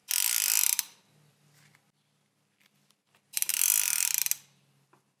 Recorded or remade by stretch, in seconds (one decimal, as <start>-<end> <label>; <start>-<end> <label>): 0.0-5.2 recorded